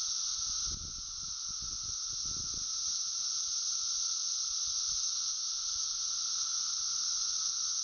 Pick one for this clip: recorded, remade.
recorded